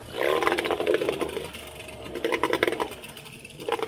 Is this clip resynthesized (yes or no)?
no